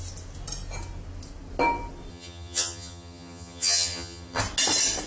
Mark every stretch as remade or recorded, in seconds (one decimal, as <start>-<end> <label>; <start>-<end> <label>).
0.0-2.1 recorded; 2.1-4.4 remade; 4.4-5.1 recorded